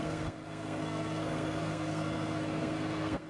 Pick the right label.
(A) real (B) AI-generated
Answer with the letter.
B